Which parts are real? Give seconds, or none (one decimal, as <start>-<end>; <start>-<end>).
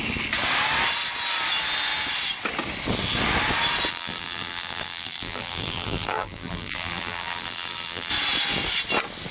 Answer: 0.0-3.9; 8.1-9.3